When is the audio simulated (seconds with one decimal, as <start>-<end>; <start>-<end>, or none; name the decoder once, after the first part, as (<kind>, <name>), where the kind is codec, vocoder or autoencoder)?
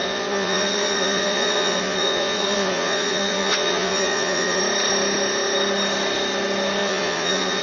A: 0.0-4.6 (vocoder, Vocos); 6.8-7.6